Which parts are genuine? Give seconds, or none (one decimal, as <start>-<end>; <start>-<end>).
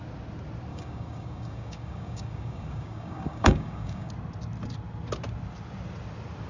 0.0-0.7; 4.1-6.5